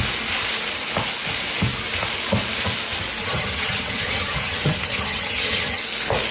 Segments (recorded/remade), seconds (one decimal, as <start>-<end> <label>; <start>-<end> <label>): 0.0-3.2 recorded; 3.2-5.8 remade; 5.8-6.3 recorded